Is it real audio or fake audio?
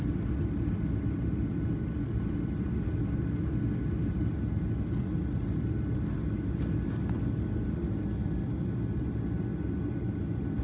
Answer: real